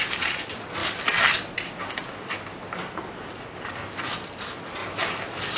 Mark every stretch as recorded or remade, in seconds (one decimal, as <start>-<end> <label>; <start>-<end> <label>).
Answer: 0.0-5.6 recorded